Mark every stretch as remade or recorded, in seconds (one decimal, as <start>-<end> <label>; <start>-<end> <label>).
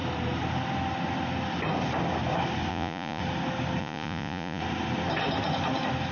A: 0.0-2.7 recorded; 2.7-3.2 remade; 3.2-3.8 recorded; 3.8-4.6 remade; 4.6-6.1 recorded